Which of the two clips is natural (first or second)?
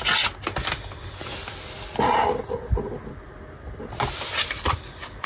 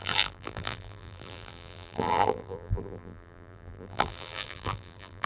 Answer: first